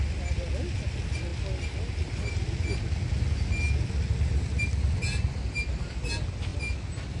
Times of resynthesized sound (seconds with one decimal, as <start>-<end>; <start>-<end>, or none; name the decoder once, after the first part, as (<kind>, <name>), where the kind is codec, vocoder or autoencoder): none